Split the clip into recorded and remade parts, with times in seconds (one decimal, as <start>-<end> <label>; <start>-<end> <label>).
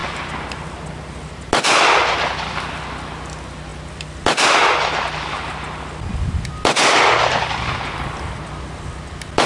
0.0-9.5 recorded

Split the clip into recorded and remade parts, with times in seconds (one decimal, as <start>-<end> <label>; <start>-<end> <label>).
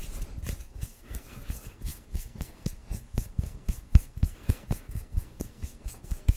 0.0-0.6 recorded; 0.6-6.4 remade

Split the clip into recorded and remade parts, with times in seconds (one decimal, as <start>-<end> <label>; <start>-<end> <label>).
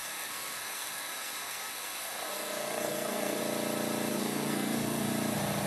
0.0-3.4 remade; 3.4-4.1 recorded; 4.1-5.1 remade; 5.1-5.7 recorded